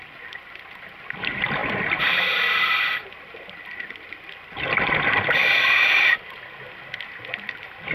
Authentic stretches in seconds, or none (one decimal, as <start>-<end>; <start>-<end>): 0.0-5.4; 6.6-7.9